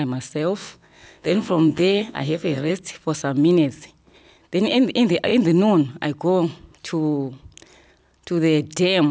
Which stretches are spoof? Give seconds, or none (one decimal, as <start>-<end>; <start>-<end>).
0.6-2.7